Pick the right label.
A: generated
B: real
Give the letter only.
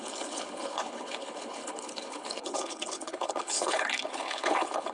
A